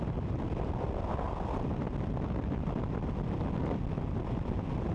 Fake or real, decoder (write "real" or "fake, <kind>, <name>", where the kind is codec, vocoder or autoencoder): real